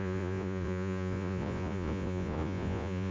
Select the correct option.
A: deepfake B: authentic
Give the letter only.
A